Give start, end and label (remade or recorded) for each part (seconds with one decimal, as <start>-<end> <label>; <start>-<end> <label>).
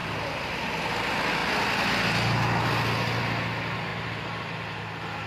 0.0-0.8 remade; 0.8-3.9 recorded; 3.9-4.8 remade; 4.8-5.3 recorded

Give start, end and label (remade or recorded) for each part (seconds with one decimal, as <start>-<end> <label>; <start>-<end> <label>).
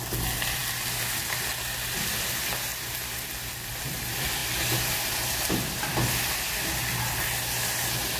0.0-8.2 recorded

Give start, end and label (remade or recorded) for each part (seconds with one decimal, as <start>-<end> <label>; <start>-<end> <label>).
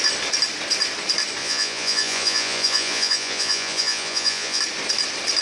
0.0-1.4 recorded; 1.4-4.6 remade; 4.6-5.4 recorded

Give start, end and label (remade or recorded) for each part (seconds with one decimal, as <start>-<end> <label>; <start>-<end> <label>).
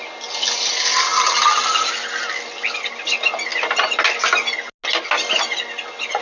0.0-6.2 recorded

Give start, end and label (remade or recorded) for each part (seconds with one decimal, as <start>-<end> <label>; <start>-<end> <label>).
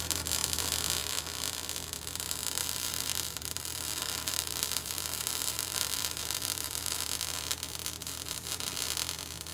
0.0-2.6 recorded; 2.6-7.0 remade; 7.0-8.0 recorded; 8.0-8.8 remade; 8.8-9.5 recorded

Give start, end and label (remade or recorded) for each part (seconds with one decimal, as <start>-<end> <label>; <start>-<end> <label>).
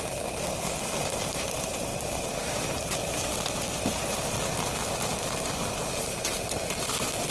0.0-1.9 recorded; 1.9-3.3 remade; 3.3-7.3 recorded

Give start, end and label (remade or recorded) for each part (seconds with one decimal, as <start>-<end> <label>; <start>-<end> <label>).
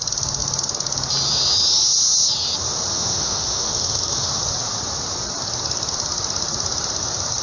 0.0-2.9 recorded; 2.9-4.4 remade; 4.4-7.4 recorded